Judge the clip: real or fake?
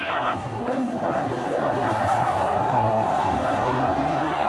fake